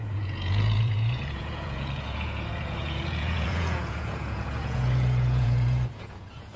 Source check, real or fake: fake